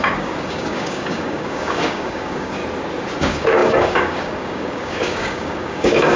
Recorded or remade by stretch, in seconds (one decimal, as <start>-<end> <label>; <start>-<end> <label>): 0.0-2.6 remade; 2.6-3.2 recorded; 3.2-6.2 remade